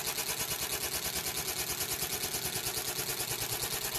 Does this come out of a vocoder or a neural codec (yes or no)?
no